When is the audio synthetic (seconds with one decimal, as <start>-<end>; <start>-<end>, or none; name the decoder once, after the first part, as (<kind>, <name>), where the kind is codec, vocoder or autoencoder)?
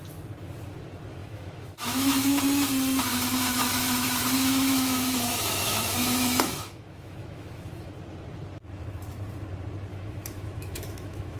1.2-2.4 (autoencoder, DAC-VAE); 3.1-7.9; 9.9-11.4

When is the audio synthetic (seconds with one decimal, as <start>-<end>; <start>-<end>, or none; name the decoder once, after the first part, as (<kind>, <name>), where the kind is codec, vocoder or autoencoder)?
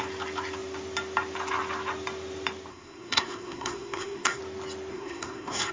2.7-4.4 (codec, SNAC); 4.9-5.7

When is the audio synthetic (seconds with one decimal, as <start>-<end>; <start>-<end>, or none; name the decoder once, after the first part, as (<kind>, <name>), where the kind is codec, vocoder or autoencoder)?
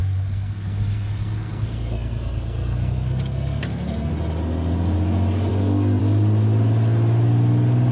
0.0-4.1 (codec, SNAC); 5.5-6.0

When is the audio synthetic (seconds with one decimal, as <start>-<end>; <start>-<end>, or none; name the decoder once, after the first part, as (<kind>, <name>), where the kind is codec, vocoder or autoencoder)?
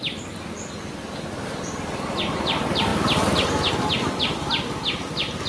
none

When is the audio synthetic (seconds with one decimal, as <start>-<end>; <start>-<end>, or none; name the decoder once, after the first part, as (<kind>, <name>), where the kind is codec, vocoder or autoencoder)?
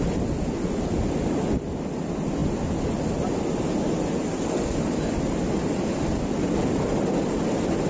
none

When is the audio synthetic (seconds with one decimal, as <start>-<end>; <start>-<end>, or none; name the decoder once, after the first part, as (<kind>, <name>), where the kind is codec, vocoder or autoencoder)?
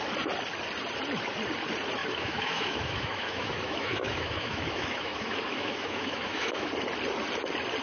2.0-6.7 (autoencoder, DAC-VAE)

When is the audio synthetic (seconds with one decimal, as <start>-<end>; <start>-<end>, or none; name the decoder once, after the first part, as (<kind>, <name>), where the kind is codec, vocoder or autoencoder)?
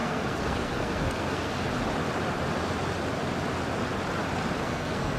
0.0-1.5 (codec, SNAC); 4.6-5.2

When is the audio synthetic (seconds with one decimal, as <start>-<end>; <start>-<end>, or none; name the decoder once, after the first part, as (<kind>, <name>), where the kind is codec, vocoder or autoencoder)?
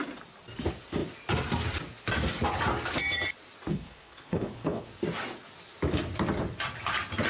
3.7-4.9 (codec, HILCodec)